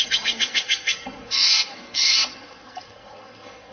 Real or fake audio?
fake